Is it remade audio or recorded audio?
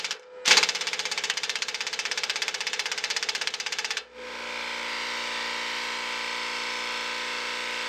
recorded